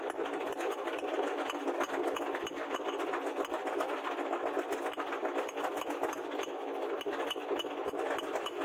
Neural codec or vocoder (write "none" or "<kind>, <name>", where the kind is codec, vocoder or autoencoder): none